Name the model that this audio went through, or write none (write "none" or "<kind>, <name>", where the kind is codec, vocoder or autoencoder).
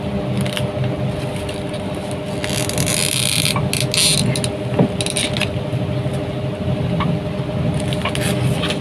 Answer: none